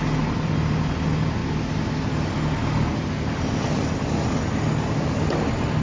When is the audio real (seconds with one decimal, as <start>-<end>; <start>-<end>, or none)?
0.0-5.8